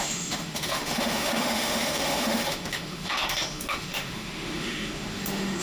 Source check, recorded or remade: remade